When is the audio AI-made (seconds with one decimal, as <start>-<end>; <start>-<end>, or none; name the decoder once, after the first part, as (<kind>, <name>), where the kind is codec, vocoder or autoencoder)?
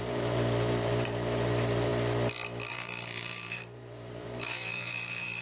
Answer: 0.0-1.9 (vocoder, BigVGAN v2); 2.7-5.4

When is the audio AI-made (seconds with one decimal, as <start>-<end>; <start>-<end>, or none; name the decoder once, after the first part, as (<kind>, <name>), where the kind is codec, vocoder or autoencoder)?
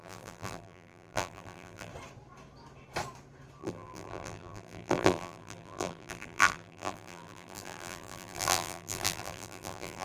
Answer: 0.0-1.9 (vocoder, BigVGAN v2); 3.6-10.0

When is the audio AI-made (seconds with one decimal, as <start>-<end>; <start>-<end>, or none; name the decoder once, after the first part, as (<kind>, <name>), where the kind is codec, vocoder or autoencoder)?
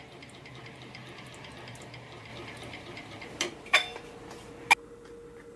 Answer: 0.0-1.0 (vocoder, BigVGAN v2); 1.8-3.9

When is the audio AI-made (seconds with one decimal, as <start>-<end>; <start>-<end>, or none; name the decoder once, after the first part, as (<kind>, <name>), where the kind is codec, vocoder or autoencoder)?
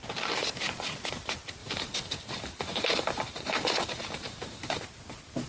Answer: 1.6-4.8 (vocoder, BigVGAN v2)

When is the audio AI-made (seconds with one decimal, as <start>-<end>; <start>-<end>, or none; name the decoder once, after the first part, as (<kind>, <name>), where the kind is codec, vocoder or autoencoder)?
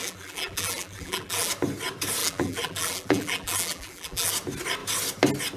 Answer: 0.0-1.5 (vocoder, BigVGAN v2); 2.2-4.3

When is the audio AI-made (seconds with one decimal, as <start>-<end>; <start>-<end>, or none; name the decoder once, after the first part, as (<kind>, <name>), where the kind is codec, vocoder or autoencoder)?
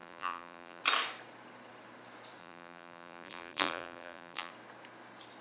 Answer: 0.0-0.8 (vocoder, BigVGAN v2); 2.4-4.5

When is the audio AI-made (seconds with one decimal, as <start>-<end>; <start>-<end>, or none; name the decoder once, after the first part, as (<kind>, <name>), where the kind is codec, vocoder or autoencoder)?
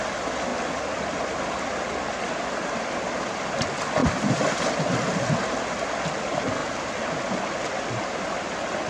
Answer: 4.0-5.0 (vocoder, BigVGAN v2); 6.6-7.3